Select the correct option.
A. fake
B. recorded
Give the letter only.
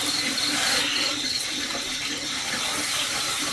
B